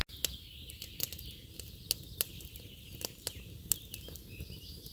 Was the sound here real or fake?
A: real